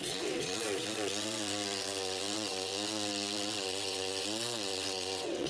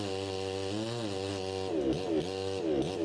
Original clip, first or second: second